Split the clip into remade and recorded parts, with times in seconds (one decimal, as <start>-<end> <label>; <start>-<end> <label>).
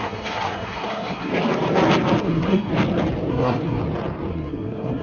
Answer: 0.0-1.3 remade; 1.3-2.2 recorded; 2.2-2.7 remade; 2.7-3.3 recorded; 3.3-3.8 remade; 3.8-4.3 recorded; 4.3-5.0 remade